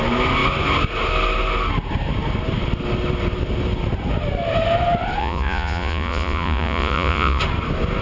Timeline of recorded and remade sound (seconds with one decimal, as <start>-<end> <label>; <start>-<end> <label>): 0.0-5.2 recorded; 5.2-7.4 remade; 7.4-8.0 recorded